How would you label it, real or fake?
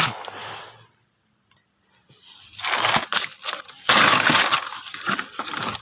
real